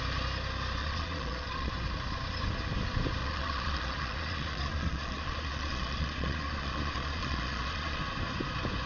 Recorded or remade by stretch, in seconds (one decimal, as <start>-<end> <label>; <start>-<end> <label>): 0.0-0.8 recorded; 0.8-1.7 remade; 1.7-3.2 recorded; 3.2-8.0 remade; 8.0-8.9 recorded